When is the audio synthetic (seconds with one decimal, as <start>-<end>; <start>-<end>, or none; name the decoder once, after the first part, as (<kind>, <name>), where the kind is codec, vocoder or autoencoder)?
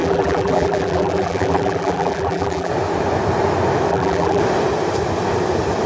0.0-2.7 (vocoder, BigVGAN v2); 3.9-4.4